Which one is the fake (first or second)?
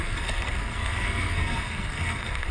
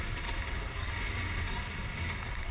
first